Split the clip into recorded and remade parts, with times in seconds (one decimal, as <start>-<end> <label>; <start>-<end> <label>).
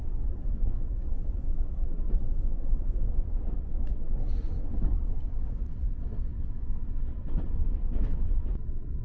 0.0-9.0 remade